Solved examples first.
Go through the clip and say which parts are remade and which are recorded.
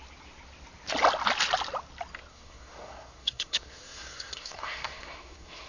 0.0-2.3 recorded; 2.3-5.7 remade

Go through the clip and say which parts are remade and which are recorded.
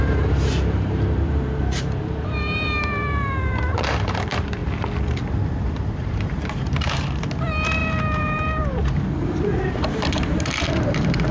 0.0-4.6 remade; 4.6-5.7 recorded; 5.7-11.3 remade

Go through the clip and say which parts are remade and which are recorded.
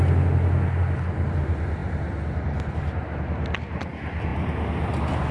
0.0-5.3 recorded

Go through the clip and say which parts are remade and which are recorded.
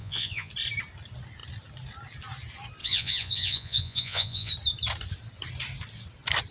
0.0-0.5 remade; 0.5-2.8 recorded; 2.8-4.5 remade; 4.5-6.5 recorded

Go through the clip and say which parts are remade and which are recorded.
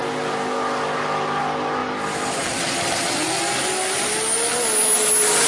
0.0-5.5 recorded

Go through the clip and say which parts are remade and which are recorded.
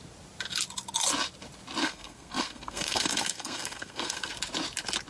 0.0-1.8 recorded; 1.8-4.3 remade; 4.3-5.1 recorded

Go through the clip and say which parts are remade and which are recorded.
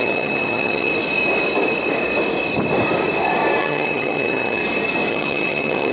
0.0-0.9 remade; 0.9-3.6 recorded; 3.6-4.6 remade; 4.6-5.1 recorded; 5.1-5.9 remade